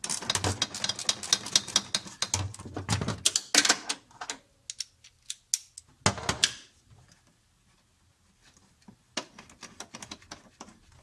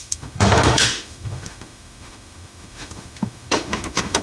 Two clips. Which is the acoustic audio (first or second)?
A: first